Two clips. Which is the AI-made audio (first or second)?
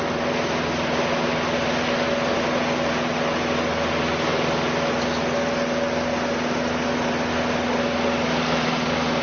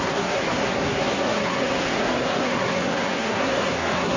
second